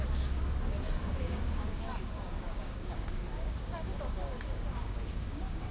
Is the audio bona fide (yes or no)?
no